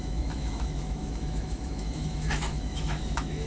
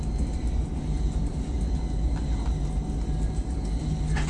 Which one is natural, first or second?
second